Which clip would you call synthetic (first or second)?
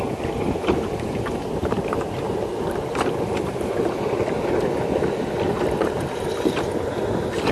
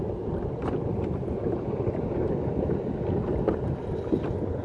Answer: second